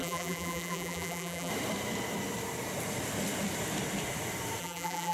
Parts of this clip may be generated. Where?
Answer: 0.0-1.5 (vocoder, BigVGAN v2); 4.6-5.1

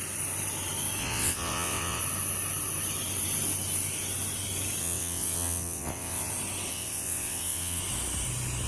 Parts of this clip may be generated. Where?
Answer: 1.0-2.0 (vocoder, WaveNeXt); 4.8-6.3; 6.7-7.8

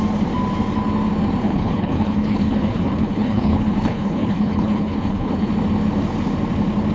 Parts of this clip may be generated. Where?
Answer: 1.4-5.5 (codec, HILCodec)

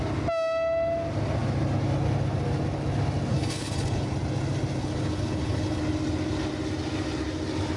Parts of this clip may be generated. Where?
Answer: 3.3-4.1 (codec, HILCodec); 4.8-5.8